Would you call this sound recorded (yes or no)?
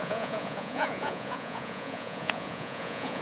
no